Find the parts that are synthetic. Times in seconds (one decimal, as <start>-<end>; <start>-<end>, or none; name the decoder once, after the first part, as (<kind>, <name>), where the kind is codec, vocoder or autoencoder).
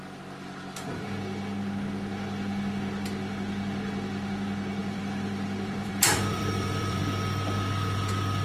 4.8-7.0 (vocoder, BigVGAN v2)